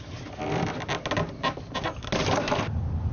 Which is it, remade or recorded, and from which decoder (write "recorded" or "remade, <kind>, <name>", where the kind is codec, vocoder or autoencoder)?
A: recorded